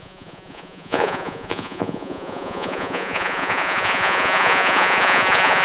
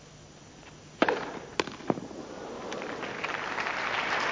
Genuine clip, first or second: second